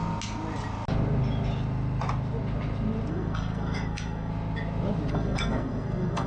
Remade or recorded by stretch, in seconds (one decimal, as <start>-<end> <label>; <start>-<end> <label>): 0.0-3.1 recorded; 3.1-4.3 remade; 4.3-5.1 recorded; 5.1-6.3 remade